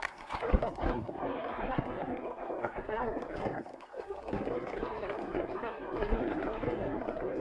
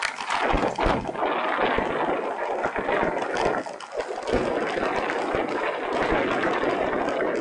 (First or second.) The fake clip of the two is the first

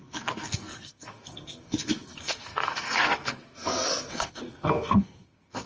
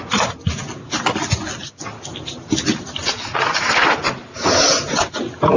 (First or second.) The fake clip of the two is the first